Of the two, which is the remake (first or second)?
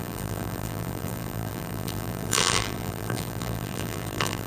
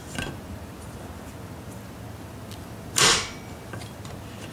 first